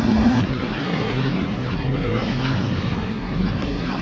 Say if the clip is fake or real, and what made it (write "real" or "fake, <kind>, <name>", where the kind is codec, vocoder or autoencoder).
fake, codec, SNAC